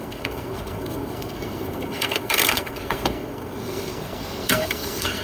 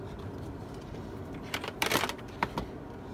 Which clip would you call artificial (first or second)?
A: first